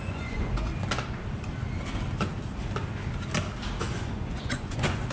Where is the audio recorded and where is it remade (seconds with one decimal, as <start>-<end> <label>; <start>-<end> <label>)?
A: 0.0-0.7 remade; 0.7-3.8 recorded; 3.8-5.1 remade